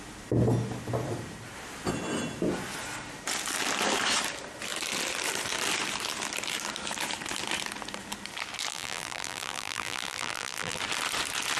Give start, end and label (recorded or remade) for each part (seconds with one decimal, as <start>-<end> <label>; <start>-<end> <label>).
0.0-8.7 recorded; 8.7-10.8 remade; 10.8-11.6 recorded